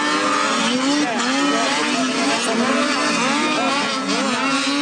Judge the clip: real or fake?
real